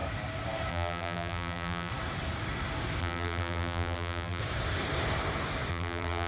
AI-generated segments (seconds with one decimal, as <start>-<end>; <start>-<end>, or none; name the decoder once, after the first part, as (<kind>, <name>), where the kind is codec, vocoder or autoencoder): 0.7-1.9 (vocoder, BigVGAN v2); 3.0-4.4; 5.7-6.3

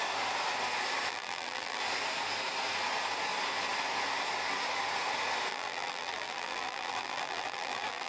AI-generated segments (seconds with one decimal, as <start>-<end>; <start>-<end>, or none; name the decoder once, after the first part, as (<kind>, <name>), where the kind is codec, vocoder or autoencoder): 1.1-1.8 (vocoder, BigVGAN v2); 5.5-8.1

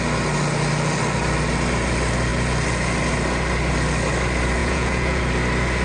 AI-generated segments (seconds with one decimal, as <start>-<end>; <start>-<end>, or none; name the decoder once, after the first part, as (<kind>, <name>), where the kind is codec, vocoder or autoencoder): 4.6-5.2 (vocoder, Vocos)

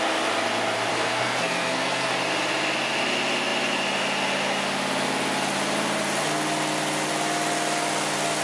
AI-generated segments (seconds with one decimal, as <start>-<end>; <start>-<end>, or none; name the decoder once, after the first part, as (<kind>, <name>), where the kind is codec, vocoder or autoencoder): 0.9-2.1 (codec, SNAC)

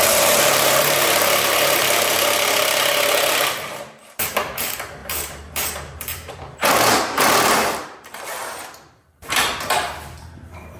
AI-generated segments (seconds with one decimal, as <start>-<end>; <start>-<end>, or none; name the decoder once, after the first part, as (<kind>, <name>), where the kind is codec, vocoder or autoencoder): 0.0-10.8 (vocoder, BigVGAN v2)

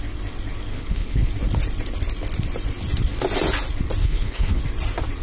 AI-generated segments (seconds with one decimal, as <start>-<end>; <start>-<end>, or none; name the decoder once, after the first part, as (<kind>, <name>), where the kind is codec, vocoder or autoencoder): 0.7-1.3 (codec, HILCodec); 4.0-4.6

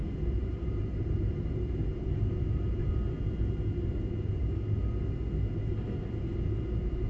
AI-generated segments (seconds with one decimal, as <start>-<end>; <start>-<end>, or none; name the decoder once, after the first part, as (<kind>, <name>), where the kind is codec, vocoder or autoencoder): 0.0-2.8 (vocoder, BigVGAN v2)